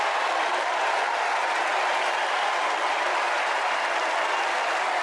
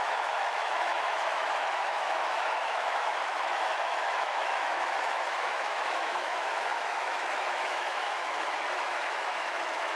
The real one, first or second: first